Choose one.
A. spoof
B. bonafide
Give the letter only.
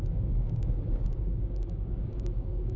A